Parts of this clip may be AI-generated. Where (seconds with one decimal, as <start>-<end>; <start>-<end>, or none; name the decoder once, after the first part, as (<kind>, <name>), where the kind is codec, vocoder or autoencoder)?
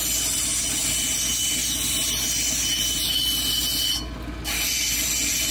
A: none